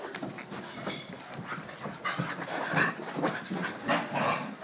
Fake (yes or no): no